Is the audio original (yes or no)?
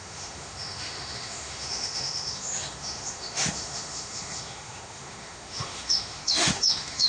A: no